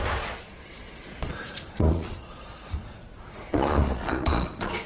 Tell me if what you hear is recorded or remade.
remade